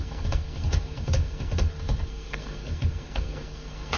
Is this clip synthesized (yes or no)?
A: yes